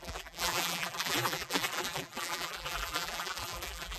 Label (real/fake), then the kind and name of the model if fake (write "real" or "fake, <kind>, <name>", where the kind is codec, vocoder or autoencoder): fake, vocoder, BigVGAN v2